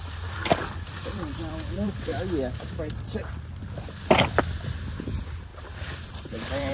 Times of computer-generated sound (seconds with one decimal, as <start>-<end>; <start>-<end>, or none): 0.0-2.1; 4.0-5.5; 6.1-6.7